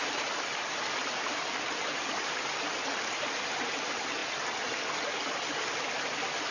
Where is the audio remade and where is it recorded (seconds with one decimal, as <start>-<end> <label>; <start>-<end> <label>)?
0.0-6.5 recorded